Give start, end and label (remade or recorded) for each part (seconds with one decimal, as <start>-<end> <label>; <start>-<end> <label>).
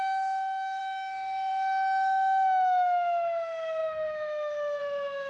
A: 0.0-5.3 remade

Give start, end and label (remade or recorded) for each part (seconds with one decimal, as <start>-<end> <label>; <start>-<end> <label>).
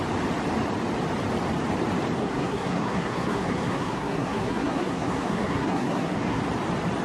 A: 0.0-2.2 recorded; 2.2-6.4 remade; 6.4-7.0 recorded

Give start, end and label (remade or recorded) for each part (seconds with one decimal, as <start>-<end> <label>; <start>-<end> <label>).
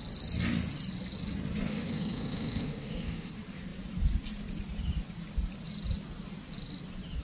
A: 0.0-1.7 recorded; 1.7-3.3 remade; 3.3-7.2 recorded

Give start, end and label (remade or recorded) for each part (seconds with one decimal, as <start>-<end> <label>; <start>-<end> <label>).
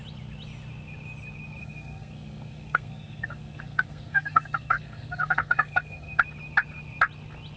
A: 0.0-1.6 recorded; 1.6-6.2 remade; 6.2-7.6 recorded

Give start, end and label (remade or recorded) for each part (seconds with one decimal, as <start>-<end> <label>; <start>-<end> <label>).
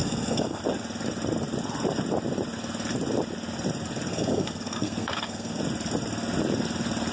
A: 0.0-0.6 remade; 0.6-4.1 recorded; 4.1-5.6 remade; 5.6-7.1 recorded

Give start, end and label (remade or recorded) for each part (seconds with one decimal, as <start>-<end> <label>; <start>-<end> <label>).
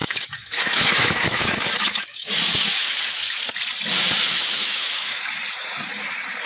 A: 0.0-2.3 remade; 2.3-2.8 recorded; 2.8-3.4 remade; 3.4-4.2 recorded; 4.2-5.2 remade; 5.2-6.5 recorded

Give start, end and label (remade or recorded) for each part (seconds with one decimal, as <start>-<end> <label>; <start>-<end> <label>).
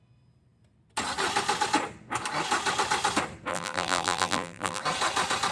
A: 0.0-3.5 recorded; 3.5-4.8 remade; 4.8-5.5 recorded